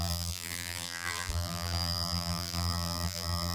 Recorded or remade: remade